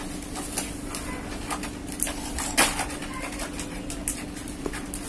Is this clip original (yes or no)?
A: yes